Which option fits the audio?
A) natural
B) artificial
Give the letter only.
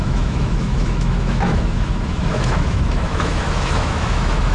B